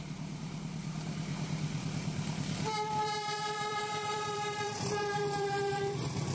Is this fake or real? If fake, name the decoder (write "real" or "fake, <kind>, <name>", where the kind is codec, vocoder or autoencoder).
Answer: fake, vocoder, BigVGAN v2